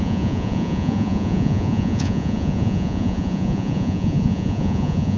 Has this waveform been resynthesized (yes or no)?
yes